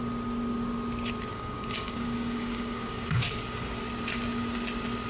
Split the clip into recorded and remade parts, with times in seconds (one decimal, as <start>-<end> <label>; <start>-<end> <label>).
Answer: 0.0-1.3 recorded; 1.3-3.8 remade; 3.8-5.1 recorded